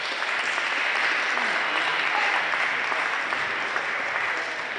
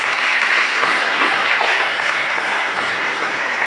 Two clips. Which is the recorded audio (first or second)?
first